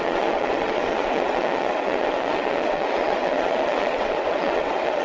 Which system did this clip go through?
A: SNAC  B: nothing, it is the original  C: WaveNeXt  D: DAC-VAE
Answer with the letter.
C